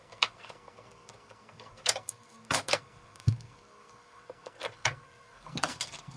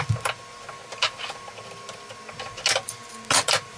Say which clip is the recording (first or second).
second